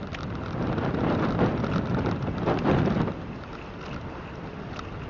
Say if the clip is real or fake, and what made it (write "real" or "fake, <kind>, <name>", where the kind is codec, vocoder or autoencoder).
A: real